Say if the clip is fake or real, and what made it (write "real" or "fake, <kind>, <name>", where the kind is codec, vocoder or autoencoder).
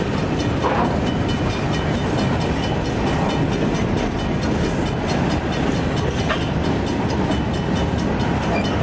real